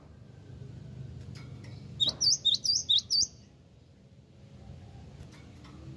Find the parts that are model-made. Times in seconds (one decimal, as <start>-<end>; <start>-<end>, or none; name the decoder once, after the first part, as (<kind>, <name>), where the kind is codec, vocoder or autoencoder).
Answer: none